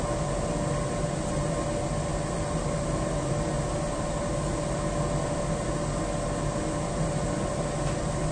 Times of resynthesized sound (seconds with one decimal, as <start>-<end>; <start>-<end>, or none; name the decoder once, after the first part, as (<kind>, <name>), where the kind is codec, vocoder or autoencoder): none